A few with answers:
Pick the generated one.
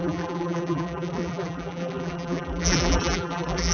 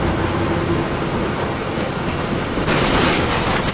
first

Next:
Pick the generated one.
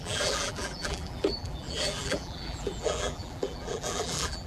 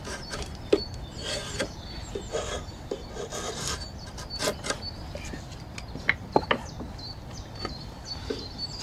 first